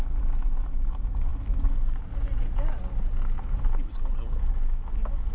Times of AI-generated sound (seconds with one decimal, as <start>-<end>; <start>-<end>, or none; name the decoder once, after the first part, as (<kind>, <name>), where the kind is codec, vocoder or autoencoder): none

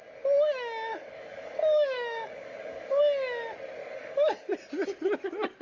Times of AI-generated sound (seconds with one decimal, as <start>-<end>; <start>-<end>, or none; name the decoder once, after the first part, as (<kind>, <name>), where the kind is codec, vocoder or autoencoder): 0.9-3.0 (codec, DAC); 3.8-4.5

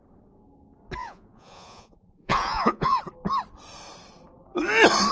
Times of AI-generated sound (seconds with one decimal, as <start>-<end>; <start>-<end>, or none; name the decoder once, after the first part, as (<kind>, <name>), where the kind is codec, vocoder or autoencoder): 1.0-3.0 (vocoder, Vocos)